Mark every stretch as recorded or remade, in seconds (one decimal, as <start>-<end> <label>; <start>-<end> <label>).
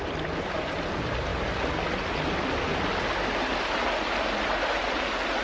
0.0-5.4 recorded